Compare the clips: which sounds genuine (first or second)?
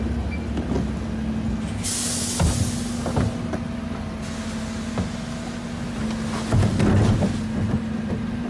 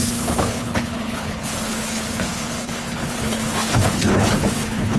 first